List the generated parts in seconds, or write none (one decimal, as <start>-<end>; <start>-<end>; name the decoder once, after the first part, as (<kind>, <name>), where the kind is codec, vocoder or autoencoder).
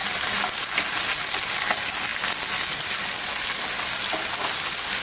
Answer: none